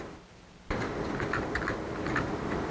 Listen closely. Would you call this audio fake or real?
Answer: real